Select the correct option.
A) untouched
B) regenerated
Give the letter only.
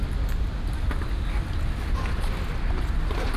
A